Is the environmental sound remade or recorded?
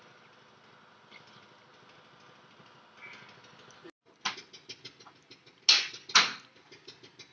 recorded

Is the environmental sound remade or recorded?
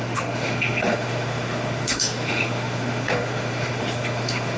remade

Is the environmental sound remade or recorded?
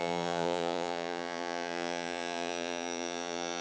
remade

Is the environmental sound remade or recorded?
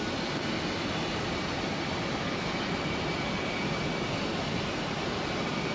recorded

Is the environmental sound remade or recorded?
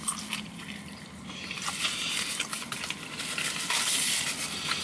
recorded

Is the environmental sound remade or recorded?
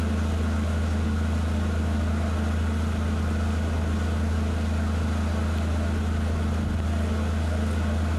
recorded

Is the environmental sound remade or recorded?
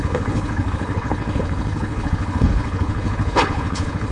remade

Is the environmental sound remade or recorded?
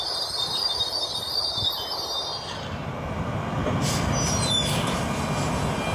recorded